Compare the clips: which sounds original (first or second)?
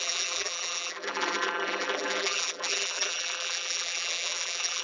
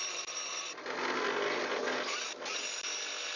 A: second